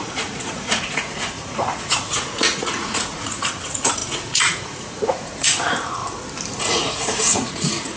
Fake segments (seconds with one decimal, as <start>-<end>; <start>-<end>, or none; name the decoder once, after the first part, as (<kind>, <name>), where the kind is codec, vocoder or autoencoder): 0.0-6.0 (vocoder, Vocos); 6.6-8.0